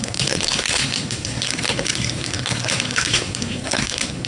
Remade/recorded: remade